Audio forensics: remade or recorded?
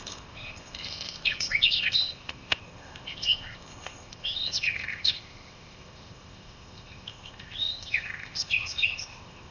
remade